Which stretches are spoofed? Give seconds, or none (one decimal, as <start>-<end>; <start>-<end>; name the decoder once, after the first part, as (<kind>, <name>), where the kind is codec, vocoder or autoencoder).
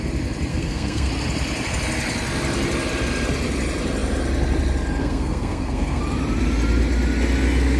0.5-1.1 (codec, SNAC); 5.0-6.0